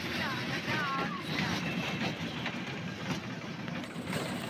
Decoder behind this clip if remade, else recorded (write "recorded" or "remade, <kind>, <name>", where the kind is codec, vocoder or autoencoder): recorded